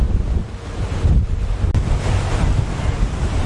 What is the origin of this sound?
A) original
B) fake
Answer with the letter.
A